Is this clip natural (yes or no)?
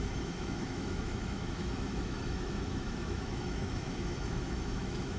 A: no